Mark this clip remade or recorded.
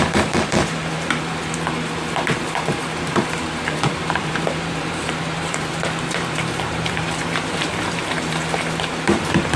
remade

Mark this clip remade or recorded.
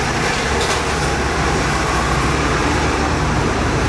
remade